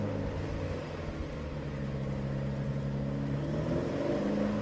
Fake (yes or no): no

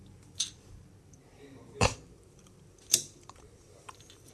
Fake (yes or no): yes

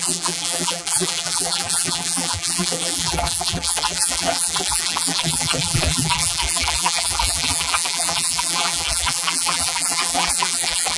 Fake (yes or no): yes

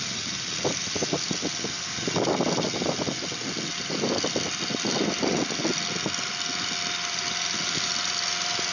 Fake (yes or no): no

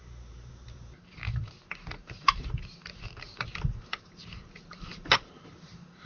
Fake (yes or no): yes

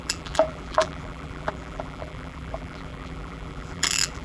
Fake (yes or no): yes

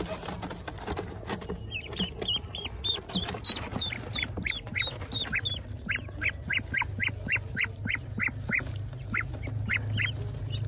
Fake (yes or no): no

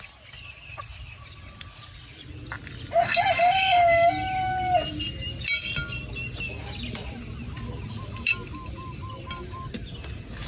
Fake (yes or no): no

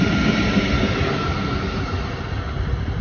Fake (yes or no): no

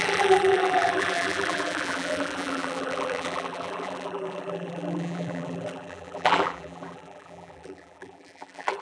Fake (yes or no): yes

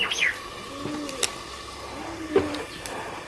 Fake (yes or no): no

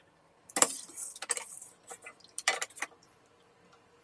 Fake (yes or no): yes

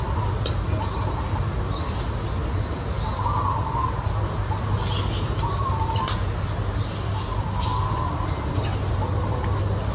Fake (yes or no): no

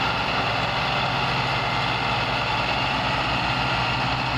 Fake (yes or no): no